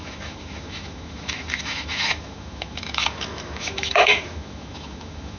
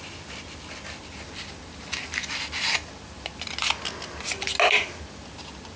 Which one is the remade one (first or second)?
first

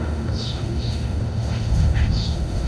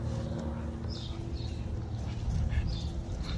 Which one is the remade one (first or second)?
first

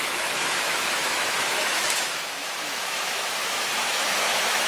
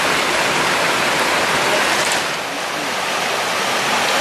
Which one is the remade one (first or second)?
first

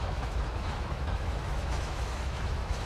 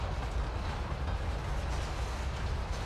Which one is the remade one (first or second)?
first